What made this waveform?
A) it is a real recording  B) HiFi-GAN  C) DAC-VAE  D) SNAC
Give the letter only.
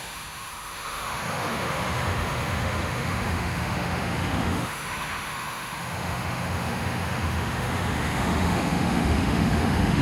C